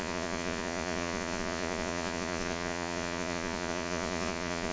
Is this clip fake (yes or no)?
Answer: yes